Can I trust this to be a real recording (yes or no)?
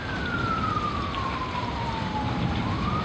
yes